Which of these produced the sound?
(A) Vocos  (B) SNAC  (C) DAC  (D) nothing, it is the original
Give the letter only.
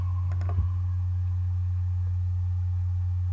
D